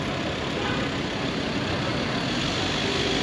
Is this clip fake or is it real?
real